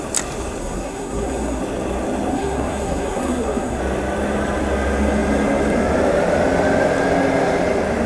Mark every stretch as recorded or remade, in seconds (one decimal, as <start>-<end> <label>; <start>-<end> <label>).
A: 0.0-0.6 recorded; 0.6-1.6 remade; 1.6-2.3 recorded; 2.3-3.8 remade; 3.8-8.1 recorded